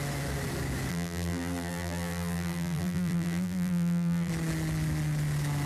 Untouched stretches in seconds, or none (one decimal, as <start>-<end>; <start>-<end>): 0.0-0.9; 4.3-5.7